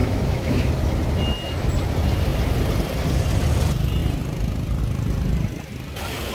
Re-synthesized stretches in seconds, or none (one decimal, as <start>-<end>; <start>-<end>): 0.0-0.7